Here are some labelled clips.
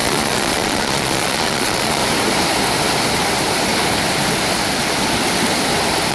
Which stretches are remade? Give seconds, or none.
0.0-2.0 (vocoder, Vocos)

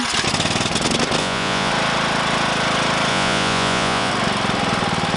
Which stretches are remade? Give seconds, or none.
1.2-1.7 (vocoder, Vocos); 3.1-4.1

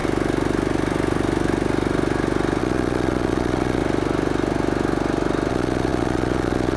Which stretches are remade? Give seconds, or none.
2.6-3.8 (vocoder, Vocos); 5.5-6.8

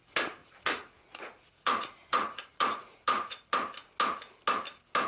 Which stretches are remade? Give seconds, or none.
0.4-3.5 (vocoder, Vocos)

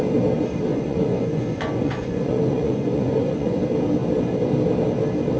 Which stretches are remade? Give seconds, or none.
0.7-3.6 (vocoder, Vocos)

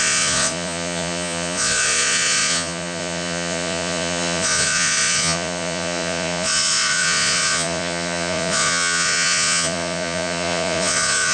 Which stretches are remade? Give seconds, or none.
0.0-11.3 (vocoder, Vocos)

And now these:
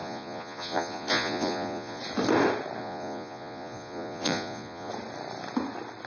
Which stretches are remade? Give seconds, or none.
0.0-2.0 (vocoder, Vocos); 2.8-4.9